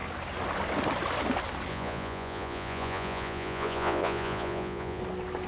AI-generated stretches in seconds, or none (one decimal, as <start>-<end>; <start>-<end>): 1.7-5.0